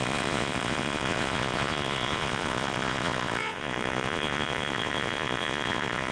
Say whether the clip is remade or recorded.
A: remade